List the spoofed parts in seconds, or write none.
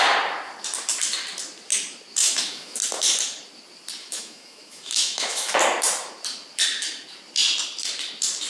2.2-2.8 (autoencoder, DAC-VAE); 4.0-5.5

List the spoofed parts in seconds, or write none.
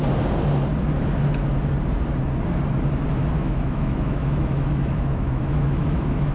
3.4-6.3 (autoencoder, DAC-VAE)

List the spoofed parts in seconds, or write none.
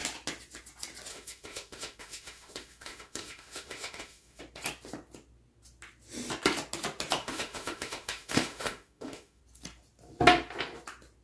1.1-4.4 (autoencoder, DAC-VAE); 7.2-9.4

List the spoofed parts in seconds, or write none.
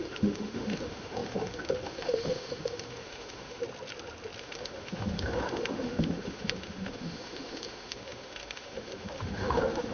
0.0-3.6 (autoencoder, DAC-VAE); 4.4-9.9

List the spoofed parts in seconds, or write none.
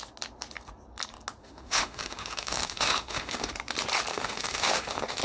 1.4-3.5 (autoencoder, DAC-VAE); 4.1-5.2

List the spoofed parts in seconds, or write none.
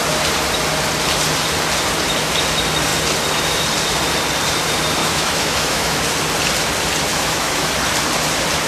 5.0-6.0 (autoencoder, DAC-VAE); 7.1-7.7